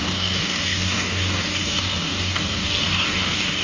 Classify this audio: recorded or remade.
remade